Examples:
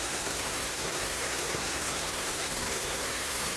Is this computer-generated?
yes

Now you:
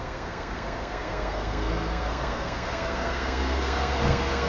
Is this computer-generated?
yes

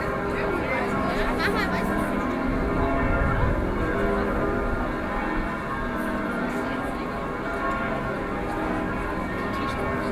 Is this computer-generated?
no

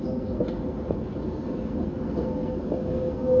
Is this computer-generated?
yes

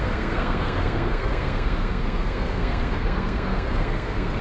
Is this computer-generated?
yes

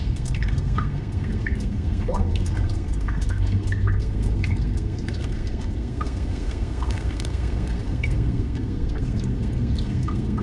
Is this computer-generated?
yes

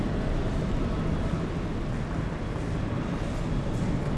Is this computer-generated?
no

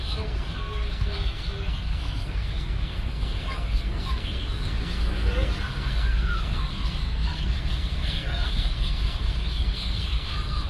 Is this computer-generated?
yes